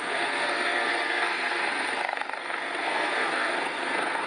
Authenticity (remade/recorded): remade